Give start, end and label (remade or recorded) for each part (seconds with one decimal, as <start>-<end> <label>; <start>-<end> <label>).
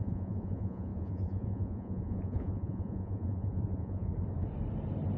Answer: 0.0-4.1 remade; 4.1-5.2 recorded